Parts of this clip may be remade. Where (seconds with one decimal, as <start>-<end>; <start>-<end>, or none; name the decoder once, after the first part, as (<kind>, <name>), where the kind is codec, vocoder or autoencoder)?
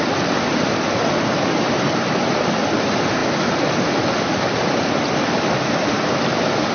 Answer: none